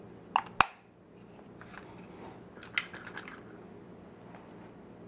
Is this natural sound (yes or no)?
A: yes